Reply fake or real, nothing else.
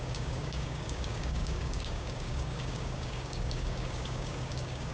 fake